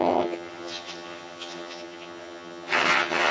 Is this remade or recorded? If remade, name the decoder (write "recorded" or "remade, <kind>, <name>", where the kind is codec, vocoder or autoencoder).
remade, vocoder, HiFi-GAN